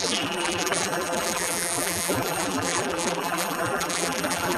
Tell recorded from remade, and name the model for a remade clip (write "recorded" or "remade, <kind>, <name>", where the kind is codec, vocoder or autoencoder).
remade, vocoder, BigVGAN v2